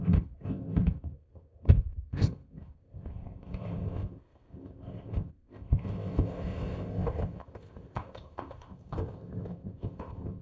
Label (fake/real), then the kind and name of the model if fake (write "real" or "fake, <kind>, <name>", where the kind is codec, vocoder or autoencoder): fake, codec, ZipCodec